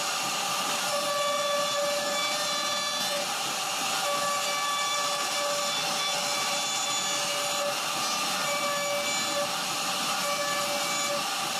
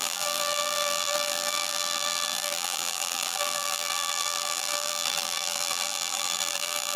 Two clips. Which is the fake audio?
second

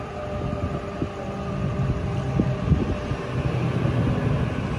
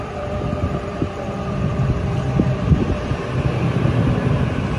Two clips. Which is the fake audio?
second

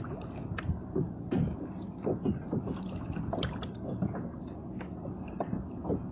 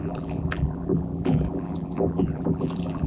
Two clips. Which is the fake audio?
second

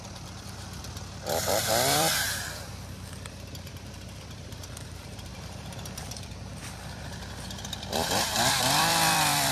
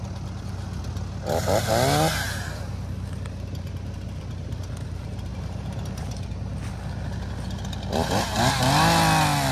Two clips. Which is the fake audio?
first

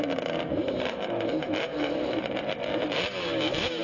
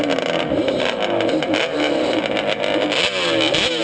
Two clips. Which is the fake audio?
first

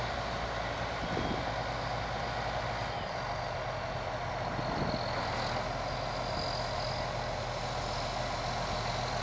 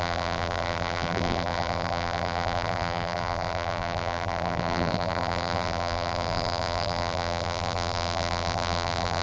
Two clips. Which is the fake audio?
second